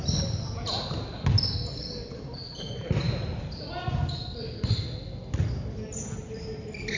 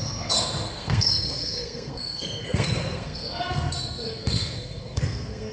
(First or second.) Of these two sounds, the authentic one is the first